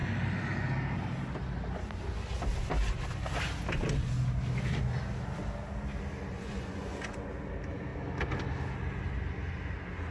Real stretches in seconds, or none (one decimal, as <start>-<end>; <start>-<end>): 0.0-6.3; 7.3-10.1